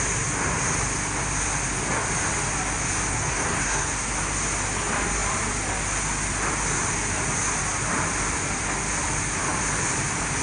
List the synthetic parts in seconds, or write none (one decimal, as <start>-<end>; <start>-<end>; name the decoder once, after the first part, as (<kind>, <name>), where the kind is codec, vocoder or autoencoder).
3.1-4.1 (codec, SNAC)